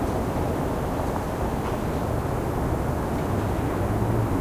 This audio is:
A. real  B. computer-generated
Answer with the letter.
A